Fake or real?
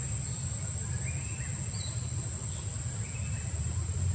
real